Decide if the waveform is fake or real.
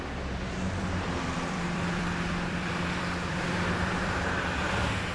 fake